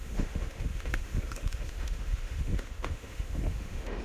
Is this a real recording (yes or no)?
no